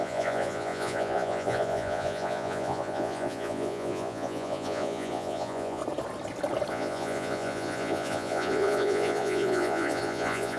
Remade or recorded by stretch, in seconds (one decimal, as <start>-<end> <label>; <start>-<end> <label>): 0.0-5.8 remade; 5.8-6.7 recorded; 6.7-10.6 remade